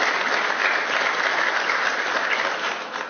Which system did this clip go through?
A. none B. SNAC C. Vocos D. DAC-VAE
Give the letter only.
A